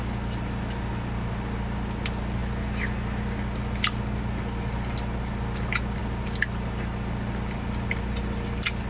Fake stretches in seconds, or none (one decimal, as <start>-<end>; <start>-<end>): none